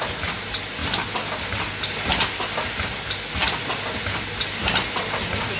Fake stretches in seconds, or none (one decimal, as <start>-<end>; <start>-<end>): none